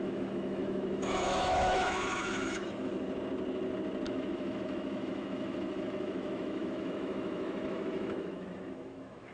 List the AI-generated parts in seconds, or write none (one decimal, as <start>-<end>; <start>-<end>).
0.0-2.9; 4.1-9.3